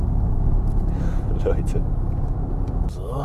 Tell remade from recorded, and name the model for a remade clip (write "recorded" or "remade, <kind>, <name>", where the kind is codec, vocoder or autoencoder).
recorded